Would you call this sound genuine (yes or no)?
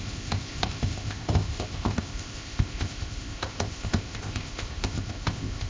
no